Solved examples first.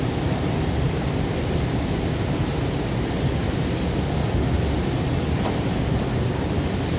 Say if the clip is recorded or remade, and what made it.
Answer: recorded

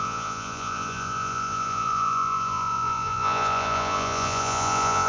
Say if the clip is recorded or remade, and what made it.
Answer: remade, vocoder, Vocos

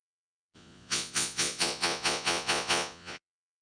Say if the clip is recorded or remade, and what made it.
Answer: remade, vocoder, Vocos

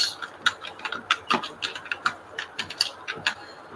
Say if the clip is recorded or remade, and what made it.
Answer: recorded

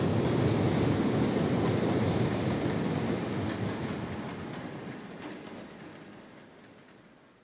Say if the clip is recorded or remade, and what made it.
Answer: recorded